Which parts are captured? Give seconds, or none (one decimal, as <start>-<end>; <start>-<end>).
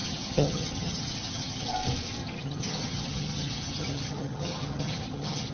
1.7-2.2